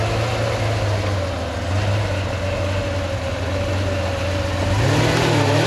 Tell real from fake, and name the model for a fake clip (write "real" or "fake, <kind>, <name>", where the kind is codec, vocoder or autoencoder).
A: real